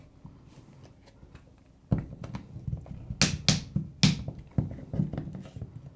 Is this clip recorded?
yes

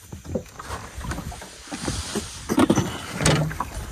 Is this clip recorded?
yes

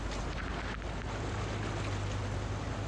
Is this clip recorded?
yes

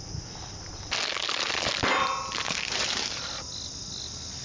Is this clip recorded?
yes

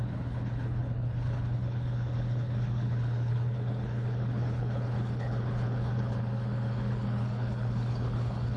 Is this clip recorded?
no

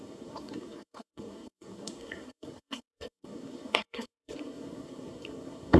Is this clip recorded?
no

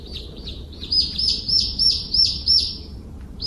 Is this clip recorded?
no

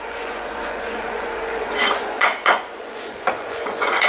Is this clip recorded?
no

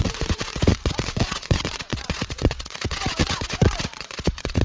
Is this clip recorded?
no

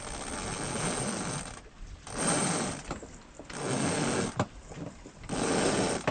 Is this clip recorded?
yes